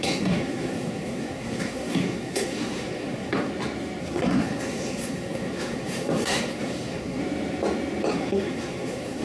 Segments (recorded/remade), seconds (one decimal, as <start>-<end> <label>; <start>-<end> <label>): 0.0-3.5 remade; 3.5-4.0 recorded; 4.0-7.2 remade; 7.2-8.1 recorded; 8.1-9.2 remade